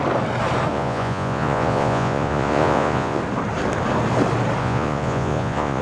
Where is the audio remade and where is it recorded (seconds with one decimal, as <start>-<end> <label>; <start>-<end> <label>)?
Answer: 0.0-0.7 recorded; 0.7-3.2 remade; 3.2-4.6 recorded; 4.6-5.8 remade

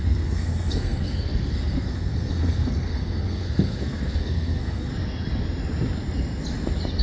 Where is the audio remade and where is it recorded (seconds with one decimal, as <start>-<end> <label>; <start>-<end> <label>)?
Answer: 0.0-4.9 remade; 4.9-7.0 recorded

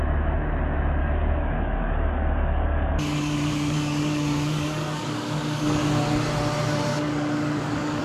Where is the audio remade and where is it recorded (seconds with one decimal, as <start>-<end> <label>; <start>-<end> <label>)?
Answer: 0.0-1.0 recorded; 1.0-5.8 remade; 5.8-6.9 recorded; 6.9-8.0 remade

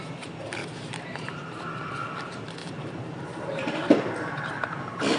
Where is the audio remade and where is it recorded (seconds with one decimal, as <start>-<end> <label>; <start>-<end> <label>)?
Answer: 0.0-0.6 recorded; 0.6-1.8 remade; 1.8-2.6 recorded; 2.6-4.8 remade; 4.8-5.2 recorded

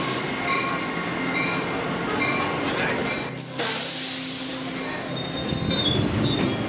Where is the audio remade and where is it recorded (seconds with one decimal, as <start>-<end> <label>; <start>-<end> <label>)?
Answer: 0.0-6.7 recorded

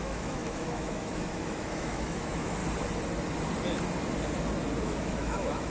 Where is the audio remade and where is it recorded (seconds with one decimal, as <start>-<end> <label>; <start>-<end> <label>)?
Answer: 0.0-2.6 remade; 2.6-4.8 recorded; 4.8-5.7 remade

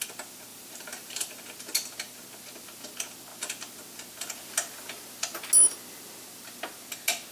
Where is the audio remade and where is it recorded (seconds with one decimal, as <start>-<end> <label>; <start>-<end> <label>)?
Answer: 0.0-0.5 recorded; 0.5-1.4 remade; 1.4-7.3 recorded